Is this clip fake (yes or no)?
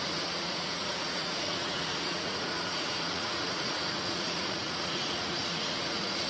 yes